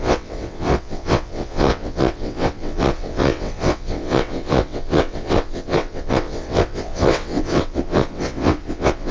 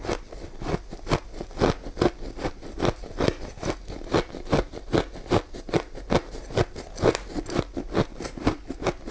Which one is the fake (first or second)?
first